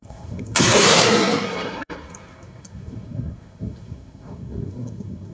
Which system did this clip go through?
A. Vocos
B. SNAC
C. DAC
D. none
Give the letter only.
B